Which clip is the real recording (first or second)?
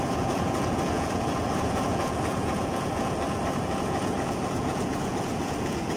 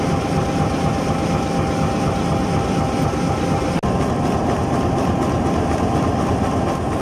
second